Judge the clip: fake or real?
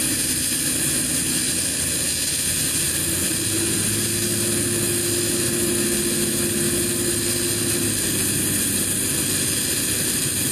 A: real